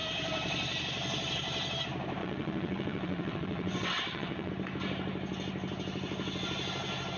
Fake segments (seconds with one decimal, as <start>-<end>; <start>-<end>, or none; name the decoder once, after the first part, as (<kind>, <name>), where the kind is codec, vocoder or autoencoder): 2.2-4.5 (vocoder, WaveNeXt)